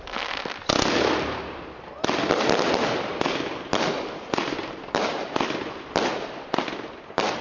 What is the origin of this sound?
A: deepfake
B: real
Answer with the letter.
B